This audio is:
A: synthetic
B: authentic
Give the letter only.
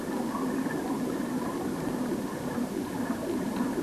B